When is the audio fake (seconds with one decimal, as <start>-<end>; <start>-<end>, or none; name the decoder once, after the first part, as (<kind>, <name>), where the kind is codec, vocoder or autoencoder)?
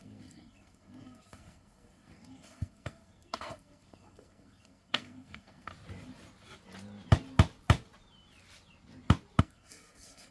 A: 0.0-5.7 (codec, SNAC); 9.4-10.3